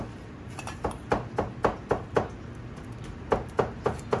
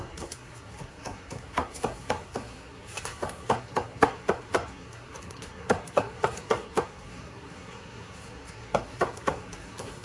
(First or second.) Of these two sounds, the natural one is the first